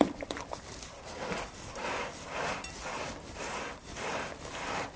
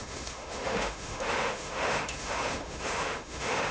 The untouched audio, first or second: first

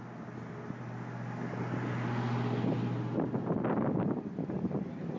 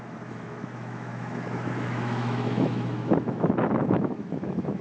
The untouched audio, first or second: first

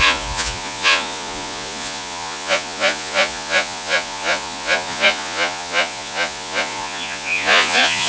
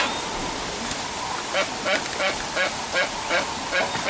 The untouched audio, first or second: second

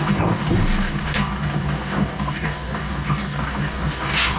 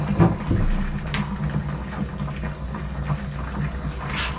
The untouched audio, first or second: second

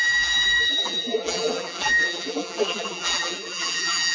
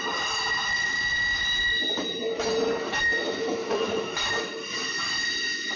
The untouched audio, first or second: second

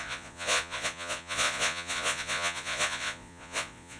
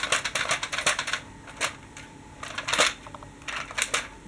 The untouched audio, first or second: second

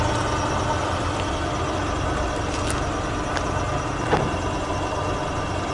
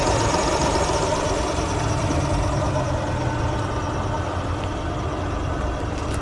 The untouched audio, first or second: first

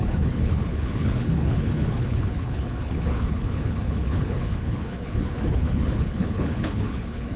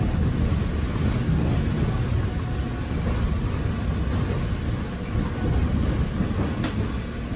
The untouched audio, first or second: second